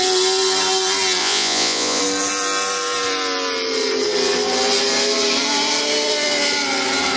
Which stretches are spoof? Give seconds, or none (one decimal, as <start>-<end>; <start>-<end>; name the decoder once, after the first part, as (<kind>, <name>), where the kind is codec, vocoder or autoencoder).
1.2-2.0 (vocoder, Vocos)